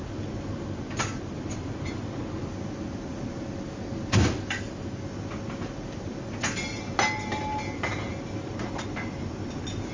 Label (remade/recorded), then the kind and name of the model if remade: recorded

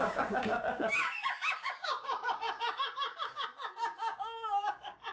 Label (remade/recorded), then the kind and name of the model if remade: remade, codec, DAC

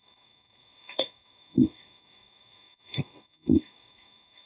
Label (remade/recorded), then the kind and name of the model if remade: remade, codec, DAC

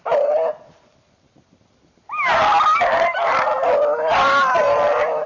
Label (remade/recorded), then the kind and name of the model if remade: recorded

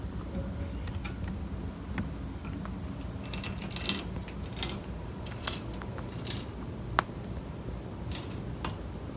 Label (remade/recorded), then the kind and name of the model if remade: recorded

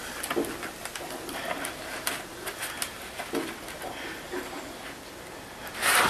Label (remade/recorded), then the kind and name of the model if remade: recorded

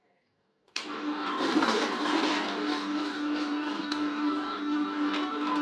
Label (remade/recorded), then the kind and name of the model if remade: remade, codec, DAC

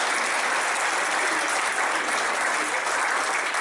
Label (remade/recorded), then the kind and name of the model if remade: recorded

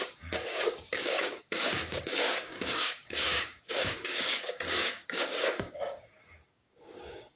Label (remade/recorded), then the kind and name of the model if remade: remade, codec, DAC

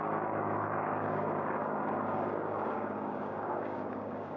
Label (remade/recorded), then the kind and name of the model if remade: remade, codec, DAC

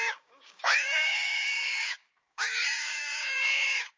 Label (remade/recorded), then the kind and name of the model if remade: remade, codec, DAC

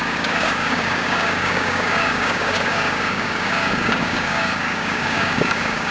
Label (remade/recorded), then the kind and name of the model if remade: remade, codec, DAC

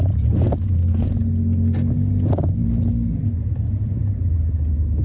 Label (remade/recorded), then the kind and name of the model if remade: recorded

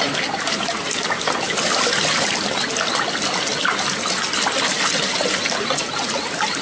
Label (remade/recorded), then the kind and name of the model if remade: recorded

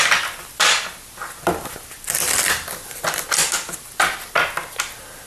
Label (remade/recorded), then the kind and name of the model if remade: recorded